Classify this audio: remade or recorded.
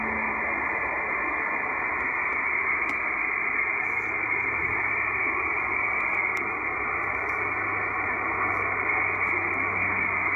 recorded